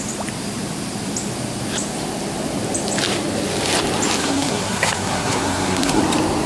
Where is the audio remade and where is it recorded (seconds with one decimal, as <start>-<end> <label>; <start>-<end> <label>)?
0.0-4.2 recorded; 4.2-6.0 remade; 6.0-6.5 recorded